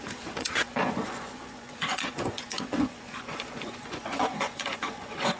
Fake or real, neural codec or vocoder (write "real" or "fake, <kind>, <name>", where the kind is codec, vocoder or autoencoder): fake, vocoder, Vocos